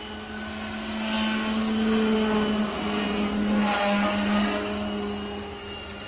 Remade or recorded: recorded